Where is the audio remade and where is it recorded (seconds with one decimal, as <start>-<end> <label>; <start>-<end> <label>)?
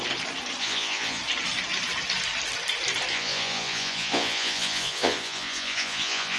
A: 0.0-0.6 recorded; 0.6-1.2 remade; 1.2-3.1 recorded; 3.1-6.4 remade